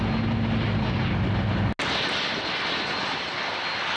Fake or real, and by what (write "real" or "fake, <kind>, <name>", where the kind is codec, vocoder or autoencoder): real